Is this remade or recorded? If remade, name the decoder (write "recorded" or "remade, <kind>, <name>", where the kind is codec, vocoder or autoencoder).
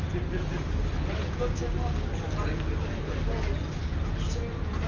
recorded